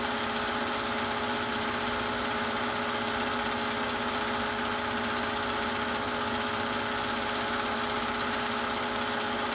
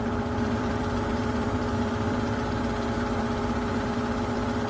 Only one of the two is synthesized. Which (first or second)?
second